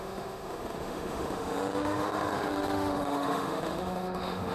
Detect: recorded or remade remade